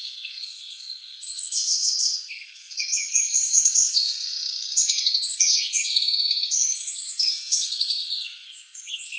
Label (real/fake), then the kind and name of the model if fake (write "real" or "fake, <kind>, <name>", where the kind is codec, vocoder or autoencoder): fake, codec, SNAC